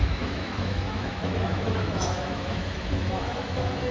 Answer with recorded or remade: remade